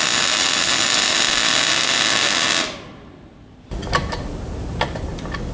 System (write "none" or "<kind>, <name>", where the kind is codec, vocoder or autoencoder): none